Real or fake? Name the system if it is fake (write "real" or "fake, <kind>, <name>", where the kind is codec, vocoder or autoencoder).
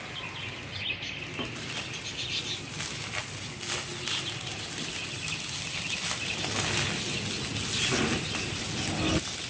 real